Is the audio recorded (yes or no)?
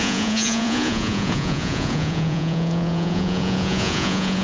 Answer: no